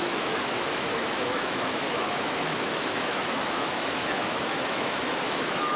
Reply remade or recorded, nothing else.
remade